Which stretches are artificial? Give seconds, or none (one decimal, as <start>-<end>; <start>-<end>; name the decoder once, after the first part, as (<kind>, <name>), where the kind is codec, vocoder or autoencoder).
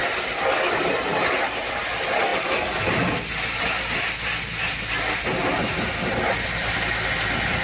none